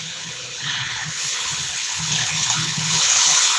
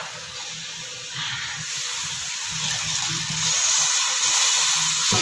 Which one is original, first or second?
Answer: second